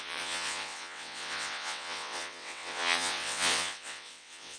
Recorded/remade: remade